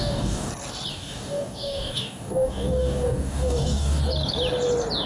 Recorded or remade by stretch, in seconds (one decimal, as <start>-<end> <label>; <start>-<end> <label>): 0.0-0.5 remade; 0.5-0.9 recorded; 0.9-4.0 remade; 4.0-5.1 recorded